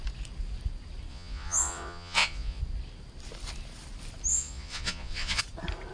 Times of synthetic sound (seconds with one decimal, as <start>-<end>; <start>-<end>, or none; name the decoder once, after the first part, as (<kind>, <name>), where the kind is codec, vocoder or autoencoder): 1.1-2.6 (vocoder, Vocos); 4.3-5.4